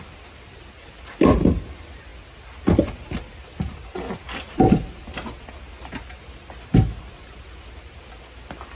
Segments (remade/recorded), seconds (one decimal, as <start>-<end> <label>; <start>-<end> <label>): 0.0-8.8 recorded